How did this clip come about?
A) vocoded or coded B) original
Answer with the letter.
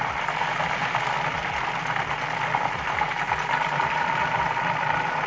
B